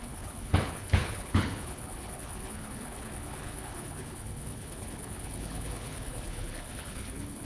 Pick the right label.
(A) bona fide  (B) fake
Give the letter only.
B